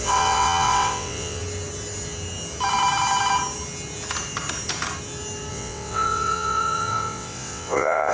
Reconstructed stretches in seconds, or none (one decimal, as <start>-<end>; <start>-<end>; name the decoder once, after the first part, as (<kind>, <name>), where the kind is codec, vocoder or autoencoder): 0.0-1.4 (vocoder, WaveNeXt); 5.5-8.1